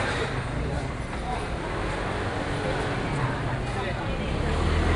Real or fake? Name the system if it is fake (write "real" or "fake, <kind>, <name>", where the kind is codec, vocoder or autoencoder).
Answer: real